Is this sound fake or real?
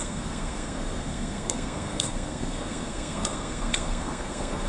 fake